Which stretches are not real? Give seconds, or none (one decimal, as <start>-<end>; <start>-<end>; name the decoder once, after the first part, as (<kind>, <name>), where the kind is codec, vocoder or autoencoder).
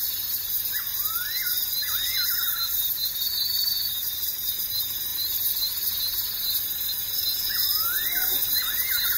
0.0-0.9 (vocoder, BigVGAN v2); 3.3-9.2